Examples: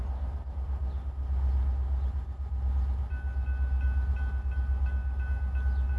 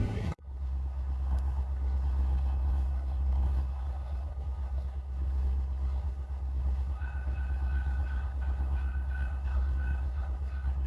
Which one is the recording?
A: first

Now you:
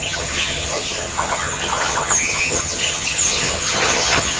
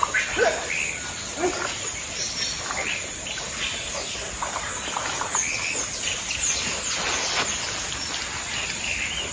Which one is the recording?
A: second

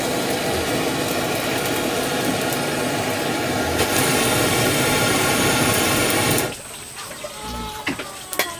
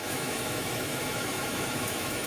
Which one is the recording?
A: first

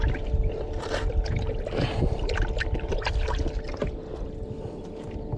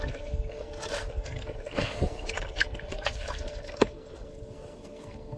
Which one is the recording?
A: first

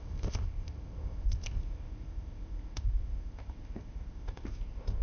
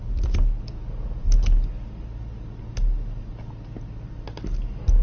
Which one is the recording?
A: second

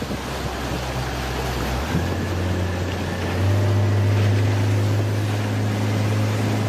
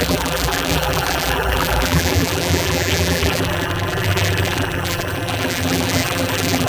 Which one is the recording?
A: first